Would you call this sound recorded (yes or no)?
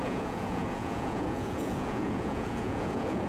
no